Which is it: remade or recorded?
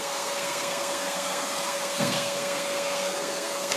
remade